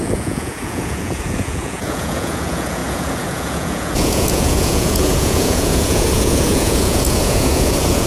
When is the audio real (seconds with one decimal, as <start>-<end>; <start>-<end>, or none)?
none